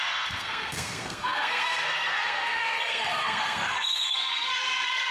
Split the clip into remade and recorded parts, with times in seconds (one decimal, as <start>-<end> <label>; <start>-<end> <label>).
0.0-5.1 remade